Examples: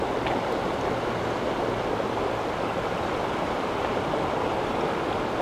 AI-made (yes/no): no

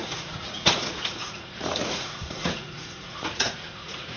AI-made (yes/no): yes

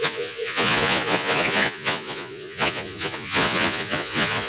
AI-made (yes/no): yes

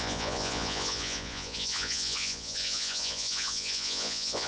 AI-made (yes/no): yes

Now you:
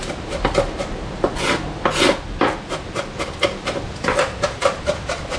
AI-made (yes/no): no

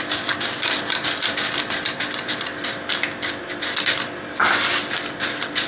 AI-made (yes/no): no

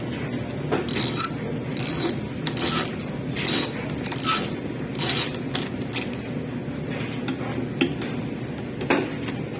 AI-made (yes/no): no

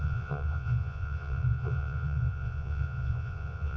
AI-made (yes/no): yes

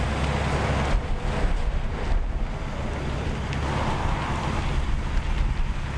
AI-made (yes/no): no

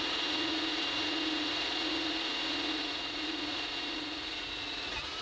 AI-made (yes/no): yes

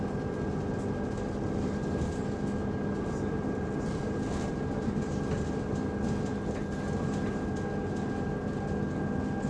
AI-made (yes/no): no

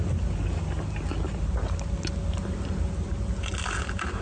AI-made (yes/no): no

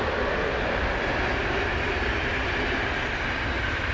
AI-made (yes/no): no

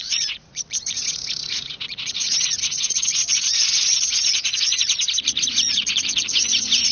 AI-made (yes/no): yes